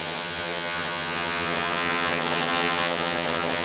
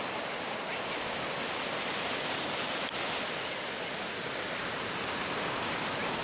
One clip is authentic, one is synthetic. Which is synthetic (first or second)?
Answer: first